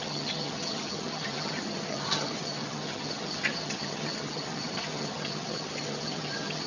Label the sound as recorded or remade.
remade